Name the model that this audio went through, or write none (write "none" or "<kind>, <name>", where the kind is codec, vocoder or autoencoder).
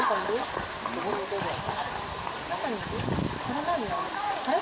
none